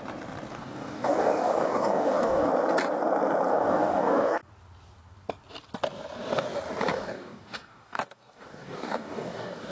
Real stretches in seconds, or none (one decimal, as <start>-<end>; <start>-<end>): 0.0-0.5; 2.5-3.5; 4.5-6.9